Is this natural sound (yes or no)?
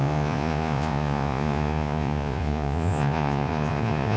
no